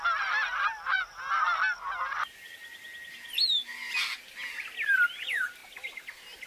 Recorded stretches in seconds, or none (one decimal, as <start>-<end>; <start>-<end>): 0.0-6.5